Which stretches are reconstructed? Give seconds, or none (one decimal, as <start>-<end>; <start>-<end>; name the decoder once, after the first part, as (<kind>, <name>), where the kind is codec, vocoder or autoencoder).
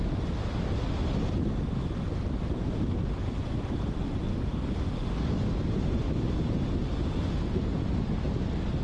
4.3-5.4 (codec, DAC)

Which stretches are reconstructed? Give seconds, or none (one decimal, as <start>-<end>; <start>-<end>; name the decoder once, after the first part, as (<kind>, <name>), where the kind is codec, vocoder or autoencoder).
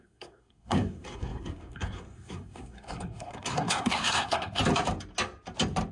0.0-4.6 (codec, SNAC)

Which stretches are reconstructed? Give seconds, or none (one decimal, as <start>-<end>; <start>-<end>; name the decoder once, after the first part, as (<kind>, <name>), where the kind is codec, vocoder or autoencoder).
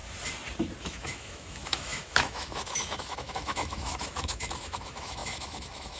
0.8-6.0 (autoencoder, DAC-VAE)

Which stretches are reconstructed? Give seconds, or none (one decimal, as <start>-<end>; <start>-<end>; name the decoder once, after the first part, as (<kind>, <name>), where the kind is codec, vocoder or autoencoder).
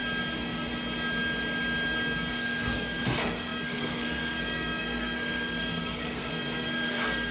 2.3-7.3 (codec, SNAC)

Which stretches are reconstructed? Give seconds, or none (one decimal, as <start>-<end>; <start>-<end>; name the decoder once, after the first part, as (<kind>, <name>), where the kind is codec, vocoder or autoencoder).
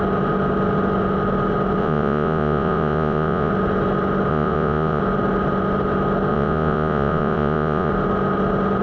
1.8-3.5 (vocoder, Vocos); 4.3-5.0; 6.3-7.9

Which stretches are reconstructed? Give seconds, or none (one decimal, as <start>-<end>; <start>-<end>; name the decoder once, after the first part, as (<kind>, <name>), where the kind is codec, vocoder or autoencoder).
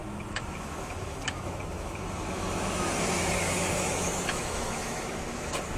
0.0-5.8 (autoencoder, DAC-VAE)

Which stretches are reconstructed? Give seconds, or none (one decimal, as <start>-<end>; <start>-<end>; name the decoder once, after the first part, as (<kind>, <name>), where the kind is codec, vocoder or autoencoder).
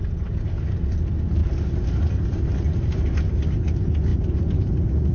1.4-2.2 (vocoder, BigVGAN v2)